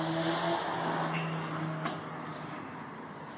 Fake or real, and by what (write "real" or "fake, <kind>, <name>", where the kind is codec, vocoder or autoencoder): real